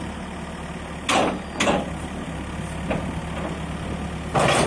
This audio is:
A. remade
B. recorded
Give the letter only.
B